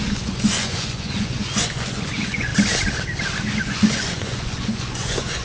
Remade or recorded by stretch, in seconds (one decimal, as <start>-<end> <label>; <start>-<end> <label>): 0.0-2.5 remade; 2.5-3.6 recorded; 3.6-5.4 remade